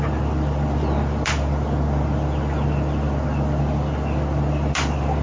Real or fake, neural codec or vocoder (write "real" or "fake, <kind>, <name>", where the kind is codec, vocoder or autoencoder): real